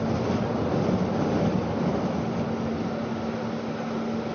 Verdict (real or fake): real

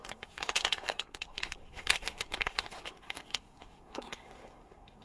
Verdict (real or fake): fake